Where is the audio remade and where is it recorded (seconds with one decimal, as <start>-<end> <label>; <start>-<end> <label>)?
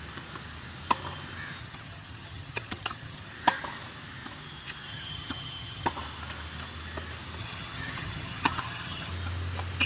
0.0-1.6 recorded; 1.6-3.3 remade; 3.3-4.9 recorded; 4.9-5.9 remade; 5.9-7.4 recorded; 7.4-9.1 remade; 9.1-9.9 recorded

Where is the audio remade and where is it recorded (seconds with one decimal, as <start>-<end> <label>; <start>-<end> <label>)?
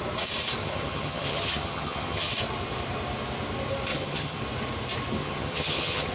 0.0-0.6 recorded; 0.6-2.3 remade; 2.3-3.9 recorded; 3.9-4.4 remade; 4.4-5.2 recorded; 5.2-6.1 remade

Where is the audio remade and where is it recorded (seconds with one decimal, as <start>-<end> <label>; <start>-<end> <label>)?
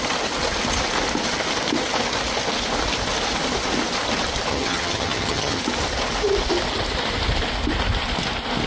0.0-4.5 recorded; 4.5-5.6 remade; 5.6-8.7 recorded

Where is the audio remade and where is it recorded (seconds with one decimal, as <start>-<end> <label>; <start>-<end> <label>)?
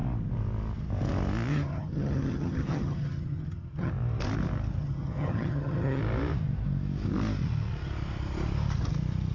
0.0-1.5 recorded; 1.5-3.9 remade; 3.9-4.8 recorded; 4.8-6.0 remade; 6.0-9.3 recorded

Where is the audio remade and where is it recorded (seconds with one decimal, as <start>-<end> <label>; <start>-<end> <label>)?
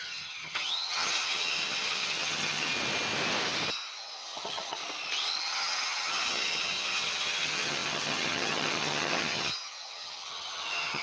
0.0-2.7 remade; 2.7-4.0 recorded; 4.0-4.8 remade; 4.8-5.4 recorded; 5.4-11.0 remade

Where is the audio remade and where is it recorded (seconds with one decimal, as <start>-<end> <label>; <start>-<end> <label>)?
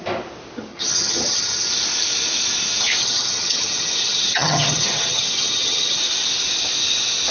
0.0-0.7 recorded; 0.7-1.7 remade; 1.7-3.0 recorded; 3.0-6.0 remade; 6.0-7.3 recorded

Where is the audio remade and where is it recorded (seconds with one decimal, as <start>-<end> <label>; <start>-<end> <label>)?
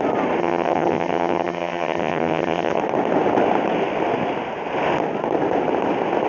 0.0-0.4 recorded; 0.4-2.8 remade; 2.8-6.3 recorded